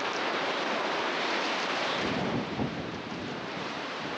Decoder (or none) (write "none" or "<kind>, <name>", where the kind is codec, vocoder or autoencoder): vocoder, BigVGAN v2